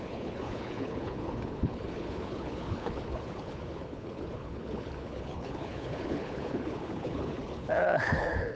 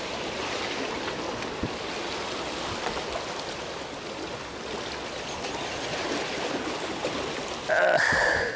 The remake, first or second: first